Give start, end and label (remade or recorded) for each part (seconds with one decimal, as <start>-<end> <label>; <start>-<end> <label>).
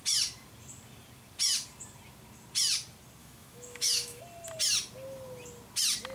0.0-3.2 recorded; 3.2-4.2 remade; 4.2-6.1 recorded